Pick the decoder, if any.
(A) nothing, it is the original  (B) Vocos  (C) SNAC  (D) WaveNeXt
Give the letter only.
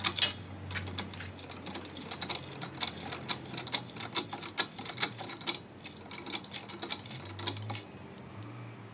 A